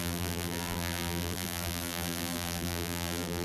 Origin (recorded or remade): remade